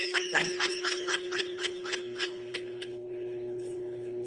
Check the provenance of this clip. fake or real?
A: fake